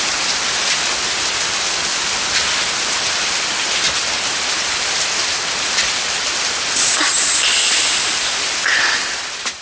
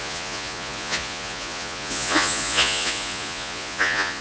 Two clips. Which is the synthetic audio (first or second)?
second